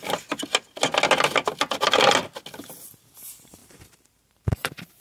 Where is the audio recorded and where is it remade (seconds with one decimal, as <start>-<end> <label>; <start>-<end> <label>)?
0.0-3.6 recorded; 3.6-5.0 remade

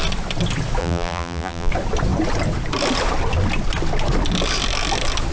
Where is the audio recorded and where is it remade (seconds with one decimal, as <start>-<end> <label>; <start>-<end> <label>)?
0.0-0.8 recorded; 0.8-1.7 remade; 1.7-5.3 recorded

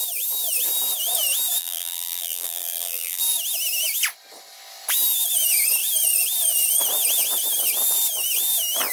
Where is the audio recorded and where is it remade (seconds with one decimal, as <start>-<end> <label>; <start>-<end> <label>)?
0.0-1.6 recorded; 1.6-3.2 remade; 3.2-8.9 recorded

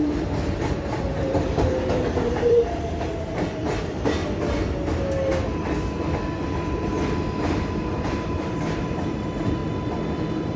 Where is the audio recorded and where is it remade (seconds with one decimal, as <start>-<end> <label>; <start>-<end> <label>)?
0.0-4.2 remade; 4.2-7.7 recorded; 7.7-9.6 remade; 9.6-10.6 recorded

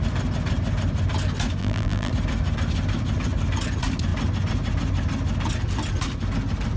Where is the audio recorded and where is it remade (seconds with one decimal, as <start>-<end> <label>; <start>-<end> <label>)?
0.0-1.6 recorded; 1.6-2.1 remade; 2.1-6.8 recorded

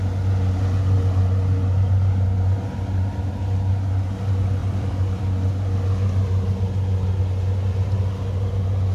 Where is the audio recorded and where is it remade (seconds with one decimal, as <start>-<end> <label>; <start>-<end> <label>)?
0.0-4.6 recorded; 4.6-5.2 remade; 5.2-8.9 recorded

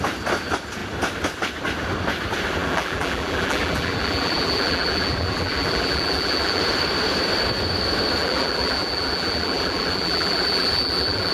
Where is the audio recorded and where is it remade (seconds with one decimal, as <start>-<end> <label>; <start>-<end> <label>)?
0.0-2.6 recorded; 2.6-6.6 remade; 6.6-8.2 recorded; 8.2-11.3 remade